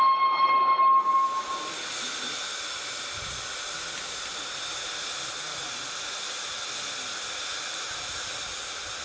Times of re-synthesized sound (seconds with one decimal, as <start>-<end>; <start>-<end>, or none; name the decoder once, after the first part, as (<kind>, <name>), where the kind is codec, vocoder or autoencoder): none